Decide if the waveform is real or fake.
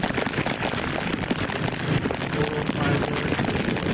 real